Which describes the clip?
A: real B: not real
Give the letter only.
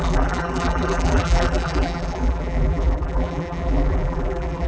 B